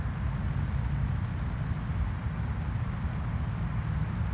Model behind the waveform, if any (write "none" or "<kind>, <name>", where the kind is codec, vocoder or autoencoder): none